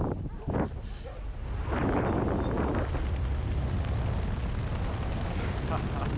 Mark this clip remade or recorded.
recorded